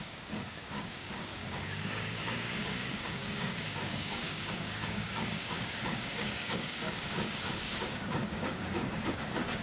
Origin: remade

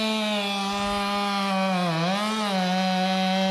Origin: recorded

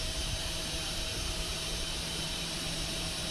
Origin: remade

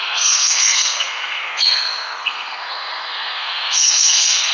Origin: remade